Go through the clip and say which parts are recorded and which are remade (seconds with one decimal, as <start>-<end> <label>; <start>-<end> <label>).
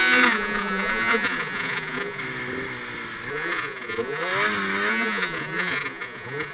0.0-2.2 remade; 2.2-3.3 recorded; 3.3-4.3 remade; 4.3-4.9 recorded; 4.9-6.5 remade